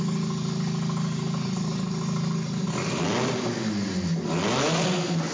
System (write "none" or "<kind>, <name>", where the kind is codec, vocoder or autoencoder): none